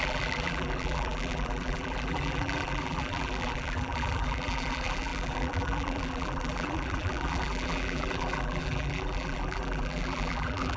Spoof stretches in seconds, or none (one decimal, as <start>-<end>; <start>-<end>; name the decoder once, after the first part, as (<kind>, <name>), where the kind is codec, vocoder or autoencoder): 0.0-10.8 (vocoder, BigVGAN v2)